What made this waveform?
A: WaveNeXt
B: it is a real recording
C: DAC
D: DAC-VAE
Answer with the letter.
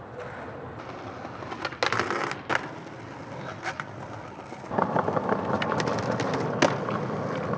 B